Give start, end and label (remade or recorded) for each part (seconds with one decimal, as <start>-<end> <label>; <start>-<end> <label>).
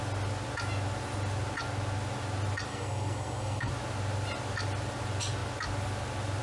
0.0-2.7 recorded; 2.7-3.7 remade; 3.7-6.4 recorded